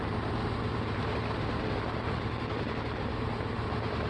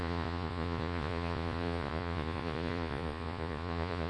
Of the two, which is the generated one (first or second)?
second